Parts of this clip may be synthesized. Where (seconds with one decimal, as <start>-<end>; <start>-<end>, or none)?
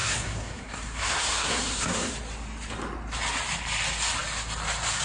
0.0-2.1